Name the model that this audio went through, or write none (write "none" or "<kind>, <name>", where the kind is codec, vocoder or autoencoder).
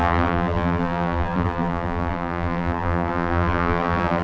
vocoder, BigVGAN v2